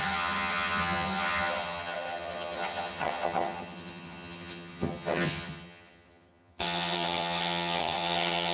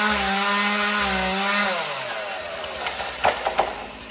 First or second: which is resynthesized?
first